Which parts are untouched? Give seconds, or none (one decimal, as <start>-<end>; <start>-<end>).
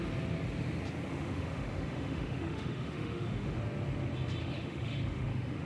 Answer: 0.0-1.1; 3.6-4.4